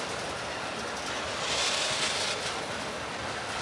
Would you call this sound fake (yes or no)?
no